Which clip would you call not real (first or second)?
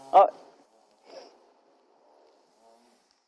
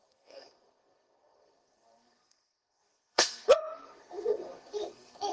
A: second